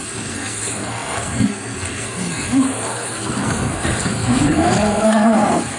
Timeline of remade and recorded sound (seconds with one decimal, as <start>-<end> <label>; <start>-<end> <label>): 0.0-5.8 remade